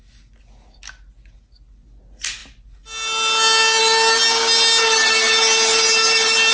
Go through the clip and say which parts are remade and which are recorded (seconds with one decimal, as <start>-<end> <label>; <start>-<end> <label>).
0.0-6.5 recorded